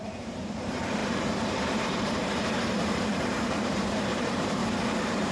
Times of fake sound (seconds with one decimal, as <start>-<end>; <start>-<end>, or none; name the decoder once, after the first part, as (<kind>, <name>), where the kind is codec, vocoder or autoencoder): 0.0-4.6 (vocoder, BigVGAN v2)